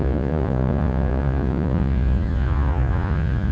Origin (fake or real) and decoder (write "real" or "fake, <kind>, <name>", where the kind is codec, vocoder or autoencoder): fake, vocoder, Vocos